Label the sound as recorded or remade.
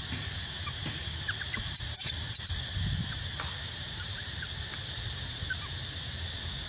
recorded